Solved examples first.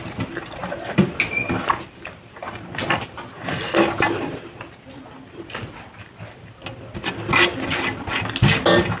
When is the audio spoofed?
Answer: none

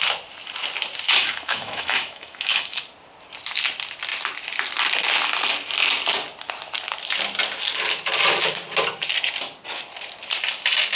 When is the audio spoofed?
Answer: 1.2-2.8